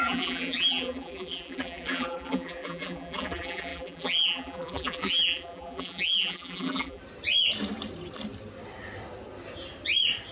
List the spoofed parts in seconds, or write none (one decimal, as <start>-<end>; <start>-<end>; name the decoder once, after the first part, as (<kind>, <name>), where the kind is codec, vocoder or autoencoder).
0.0-7.0 (vocoder, BigVGAN v2)